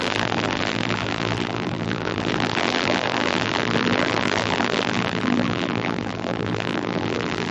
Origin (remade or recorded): remade